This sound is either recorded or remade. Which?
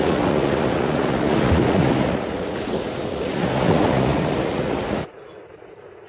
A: remade